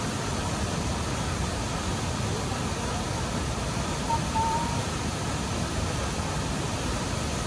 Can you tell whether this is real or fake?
real